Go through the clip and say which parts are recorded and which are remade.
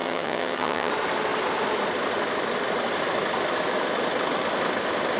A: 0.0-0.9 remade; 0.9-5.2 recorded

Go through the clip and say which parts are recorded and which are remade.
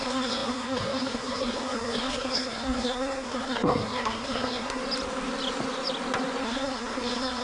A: 0.0-4.8 remade; 4.8-6.4 recorded; 6.4-7.4 remade